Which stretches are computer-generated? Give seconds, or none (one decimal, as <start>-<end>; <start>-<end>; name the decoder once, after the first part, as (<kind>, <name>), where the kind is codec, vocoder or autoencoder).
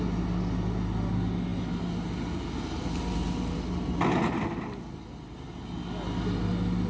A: none